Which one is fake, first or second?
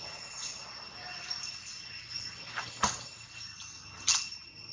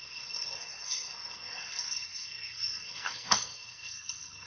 second